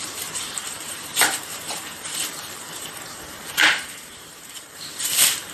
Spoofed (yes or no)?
yes